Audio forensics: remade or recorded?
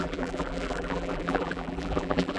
remade